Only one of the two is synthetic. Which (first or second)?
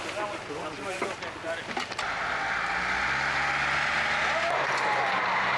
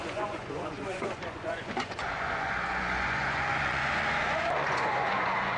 second